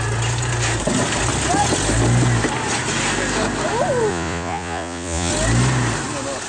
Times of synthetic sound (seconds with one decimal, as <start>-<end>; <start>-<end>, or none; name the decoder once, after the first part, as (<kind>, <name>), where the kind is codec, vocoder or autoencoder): 4.1-5.3 (vocoder, Vocos)